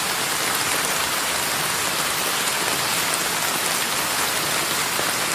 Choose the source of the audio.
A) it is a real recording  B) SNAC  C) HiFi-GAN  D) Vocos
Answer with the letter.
A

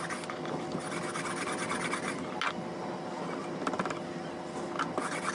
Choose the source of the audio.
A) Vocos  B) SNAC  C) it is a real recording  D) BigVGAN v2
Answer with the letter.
C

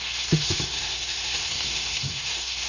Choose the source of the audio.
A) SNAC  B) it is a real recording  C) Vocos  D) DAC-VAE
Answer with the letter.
A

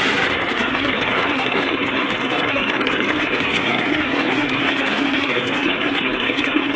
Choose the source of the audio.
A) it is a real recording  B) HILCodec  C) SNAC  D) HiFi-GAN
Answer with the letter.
C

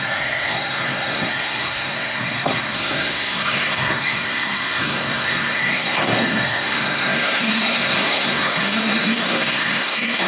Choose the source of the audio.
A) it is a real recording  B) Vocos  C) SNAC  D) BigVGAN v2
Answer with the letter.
C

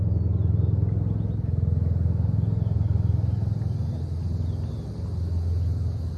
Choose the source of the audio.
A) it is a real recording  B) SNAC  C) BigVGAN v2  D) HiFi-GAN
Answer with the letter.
A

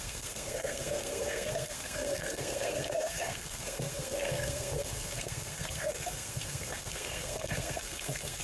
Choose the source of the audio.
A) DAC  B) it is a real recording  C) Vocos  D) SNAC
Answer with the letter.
D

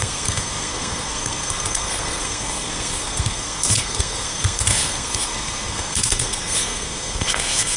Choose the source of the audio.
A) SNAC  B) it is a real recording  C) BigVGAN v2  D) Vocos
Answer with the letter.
A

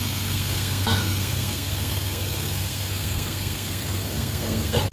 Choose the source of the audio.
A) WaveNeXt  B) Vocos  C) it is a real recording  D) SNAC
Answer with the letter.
D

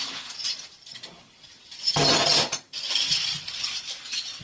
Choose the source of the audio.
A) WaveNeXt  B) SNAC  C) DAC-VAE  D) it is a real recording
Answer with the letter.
D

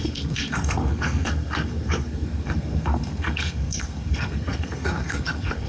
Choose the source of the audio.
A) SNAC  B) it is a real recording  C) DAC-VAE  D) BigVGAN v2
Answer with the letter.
A